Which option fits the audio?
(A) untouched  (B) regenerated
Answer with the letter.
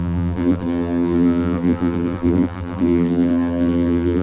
B